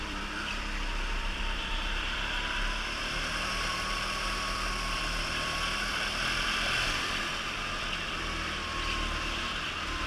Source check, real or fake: fake